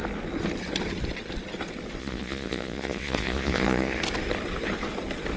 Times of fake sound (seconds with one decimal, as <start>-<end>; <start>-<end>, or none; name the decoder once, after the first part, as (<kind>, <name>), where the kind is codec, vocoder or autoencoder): 2.0-4.0 (vocoder, Vocos)